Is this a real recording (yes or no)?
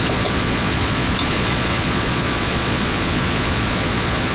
no